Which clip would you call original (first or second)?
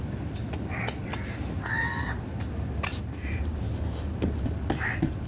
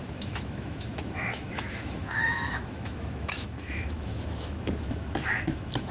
first